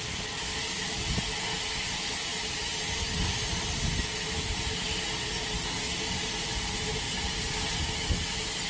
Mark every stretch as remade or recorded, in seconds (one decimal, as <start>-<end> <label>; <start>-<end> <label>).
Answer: 0.0-0.5 recorded; 0.5-1.2 remade; 1.2-8.7 recorded